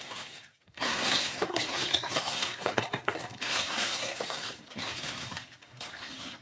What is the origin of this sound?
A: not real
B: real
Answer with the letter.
A